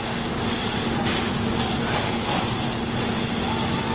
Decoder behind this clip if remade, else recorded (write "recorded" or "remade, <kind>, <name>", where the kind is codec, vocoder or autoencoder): recorded